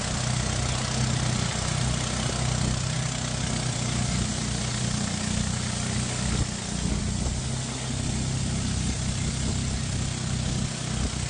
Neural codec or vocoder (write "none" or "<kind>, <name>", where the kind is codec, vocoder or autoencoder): none